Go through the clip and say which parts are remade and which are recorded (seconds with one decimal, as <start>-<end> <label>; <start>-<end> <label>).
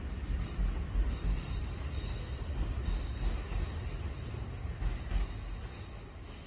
0.0-1.3 recorded; 1.3-2.5 remade; 2.5-6.5 recorded